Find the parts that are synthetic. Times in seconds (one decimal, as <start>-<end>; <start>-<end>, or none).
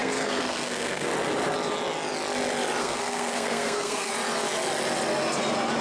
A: 0.0-1.1; 2.8-4.1